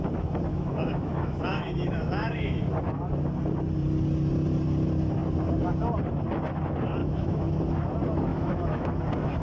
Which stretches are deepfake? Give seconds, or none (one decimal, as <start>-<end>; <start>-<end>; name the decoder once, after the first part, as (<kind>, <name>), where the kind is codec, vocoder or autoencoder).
0.5-2.6 (autoencoder, DAC-VAE); 7.0-7.6; 8.3-8.9